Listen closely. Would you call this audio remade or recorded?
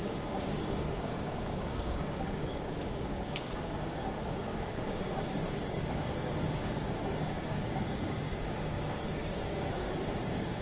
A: remade